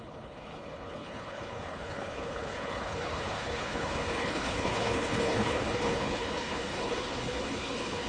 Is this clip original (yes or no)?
no